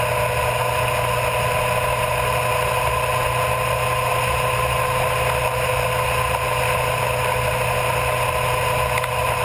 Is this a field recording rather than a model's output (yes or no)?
yes